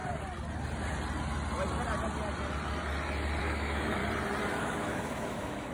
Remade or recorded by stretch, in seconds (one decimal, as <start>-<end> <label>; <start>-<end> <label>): 0.0-3.4 recorded; 3.4-4.0 remade; 4.0-4.6 recorded; 4.6-5.7 remade